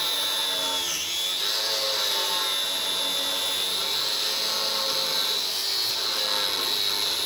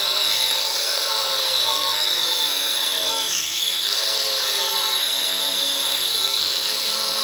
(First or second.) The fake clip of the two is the second